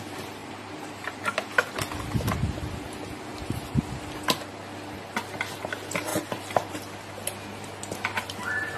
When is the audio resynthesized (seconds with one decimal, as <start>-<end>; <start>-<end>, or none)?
0.4-1.2